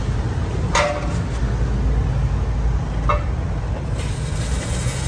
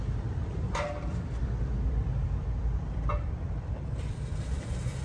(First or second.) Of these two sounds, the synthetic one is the second